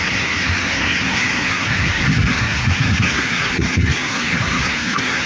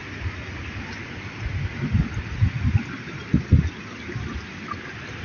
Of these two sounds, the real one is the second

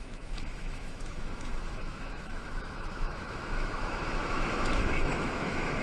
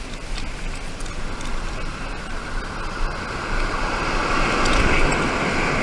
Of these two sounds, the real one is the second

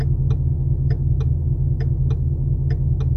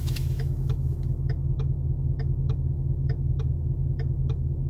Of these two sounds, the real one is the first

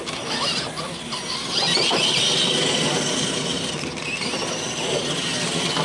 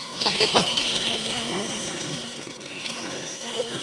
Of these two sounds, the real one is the first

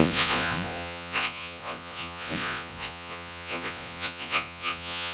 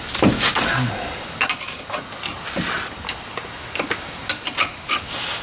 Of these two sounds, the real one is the second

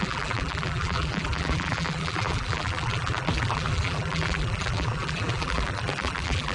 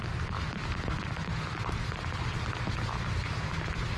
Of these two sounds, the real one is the second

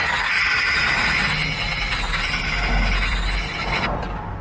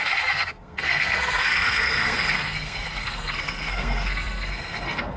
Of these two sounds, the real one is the first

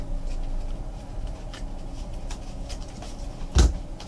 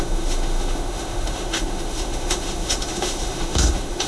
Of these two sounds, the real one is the first